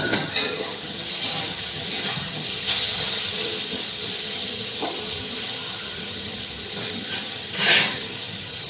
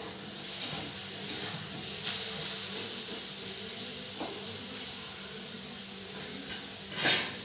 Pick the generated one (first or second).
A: first